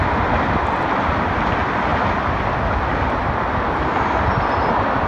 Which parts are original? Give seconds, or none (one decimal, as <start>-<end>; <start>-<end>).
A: 0.0-5.1